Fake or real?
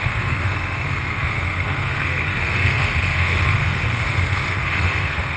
fake